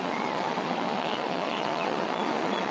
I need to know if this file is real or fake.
fake